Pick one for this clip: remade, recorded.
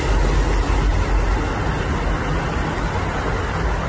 recorded